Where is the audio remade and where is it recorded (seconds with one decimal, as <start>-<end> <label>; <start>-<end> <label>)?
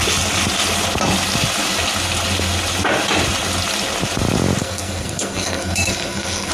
0.0-4.6 recorded; 4.6-6.5 remade